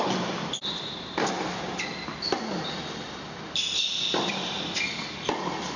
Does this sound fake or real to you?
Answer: real